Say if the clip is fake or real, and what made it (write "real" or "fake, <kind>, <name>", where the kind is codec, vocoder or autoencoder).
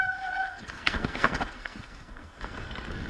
fake, codec, SNAC